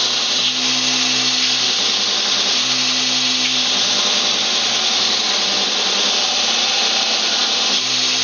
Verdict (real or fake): real